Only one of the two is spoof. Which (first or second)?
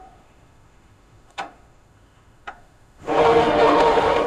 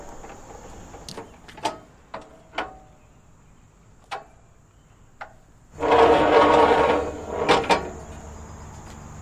first